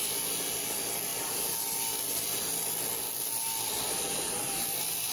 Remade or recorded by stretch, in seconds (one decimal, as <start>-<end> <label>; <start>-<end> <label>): 0.0-5.1 recorded